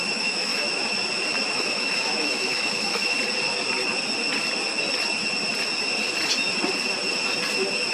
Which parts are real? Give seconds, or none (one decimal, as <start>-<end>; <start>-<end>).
0.5-1.5; 3.0-7.9

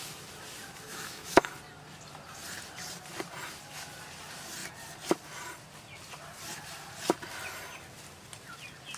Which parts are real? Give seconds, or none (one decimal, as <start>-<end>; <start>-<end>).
0.0-0.9; 1.5-9.0

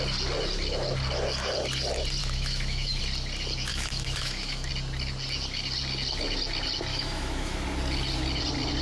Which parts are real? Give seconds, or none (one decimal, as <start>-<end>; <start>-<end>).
0.0-2.2; 3.0-3.7; 4.7-6.9; 7.6-8.8

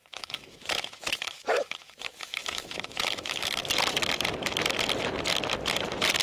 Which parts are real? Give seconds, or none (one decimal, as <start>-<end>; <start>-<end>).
3.7-6.2

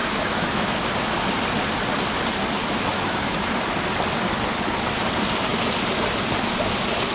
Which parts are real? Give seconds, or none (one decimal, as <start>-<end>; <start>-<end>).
0.8-2.6; 3.5-7.1

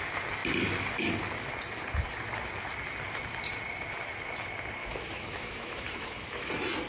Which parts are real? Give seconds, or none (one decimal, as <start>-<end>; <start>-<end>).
0.0-4.8; 6.5-6.9

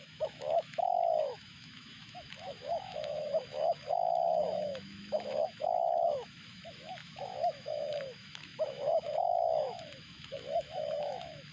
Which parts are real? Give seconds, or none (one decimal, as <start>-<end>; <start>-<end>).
none